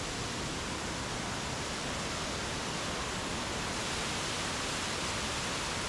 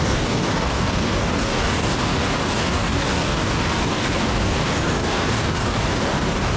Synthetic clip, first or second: second